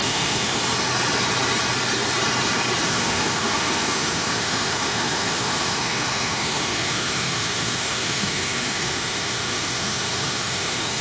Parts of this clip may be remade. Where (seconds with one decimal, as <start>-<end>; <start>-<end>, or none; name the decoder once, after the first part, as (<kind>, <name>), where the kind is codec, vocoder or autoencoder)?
0.0-0.6 (autoencoder, DAC-VAE); 2.9-11.0

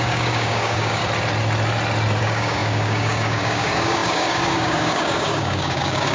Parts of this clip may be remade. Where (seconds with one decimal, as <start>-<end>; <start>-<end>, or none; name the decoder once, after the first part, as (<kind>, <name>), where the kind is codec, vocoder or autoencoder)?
0.0-1.0 (codec, DAC); 2.2-6.1